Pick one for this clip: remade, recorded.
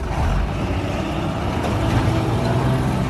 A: recorded